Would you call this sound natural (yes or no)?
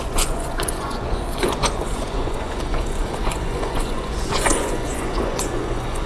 no